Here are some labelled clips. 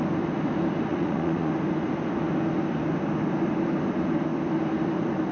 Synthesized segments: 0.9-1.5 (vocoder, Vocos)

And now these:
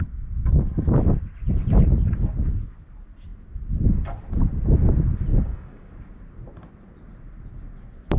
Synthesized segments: 5.3-5.9 (codec, DAC)

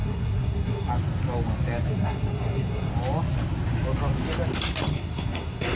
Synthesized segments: 0.0-0.9 (codec, SNAC); 1.9-2.9; 4.9-5.8

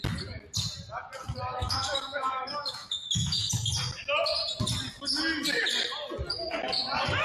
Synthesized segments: 1.6-3.5 (autoencoder, DAC-VAE)

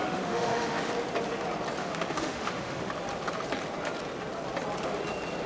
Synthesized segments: 0.0-0.9 (autoencoder, DAC-VAE); 1.8-2.9

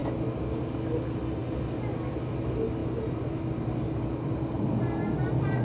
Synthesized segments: none

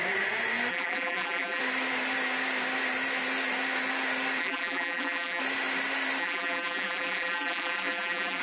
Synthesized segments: 0.7-1.6 (vocoder, BigVGAN v2); 4.4-5.4; 6.2-8.4

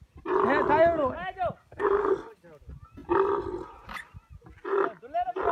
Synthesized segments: 1.6-2.1 (codec, SNAC)